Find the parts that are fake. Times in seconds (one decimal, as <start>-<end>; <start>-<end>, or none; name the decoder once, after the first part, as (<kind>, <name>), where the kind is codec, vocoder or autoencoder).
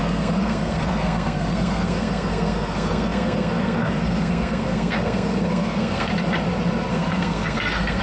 0.0-6.1 (codec, SNAC); 6.9-8.0